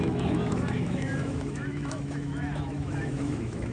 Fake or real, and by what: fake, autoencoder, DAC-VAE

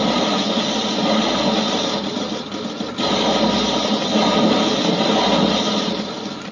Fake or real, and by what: real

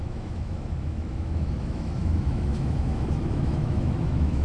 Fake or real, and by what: fake, autoencoder, DAC-VAE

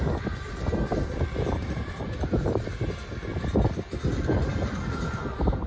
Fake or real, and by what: real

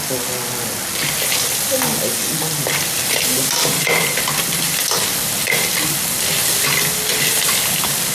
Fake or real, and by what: real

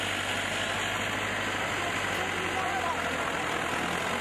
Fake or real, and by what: real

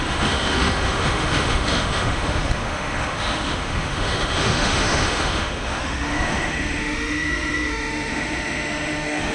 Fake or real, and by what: fake, autoencoder, DAC-VAE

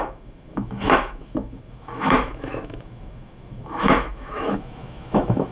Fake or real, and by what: fake, autoencoder, DAC-VAE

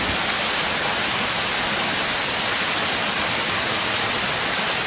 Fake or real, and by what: real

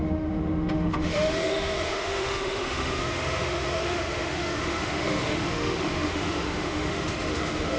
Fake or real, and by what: fake, autoencoder, DAC-VAE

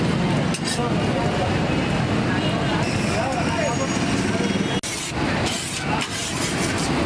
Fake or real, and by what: real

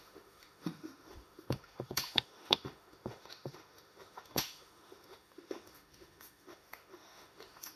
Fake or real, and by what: fake, autoencoder, DAC-VAE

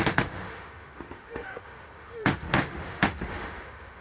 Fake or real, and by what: fake, autoencoder, DAC-VAE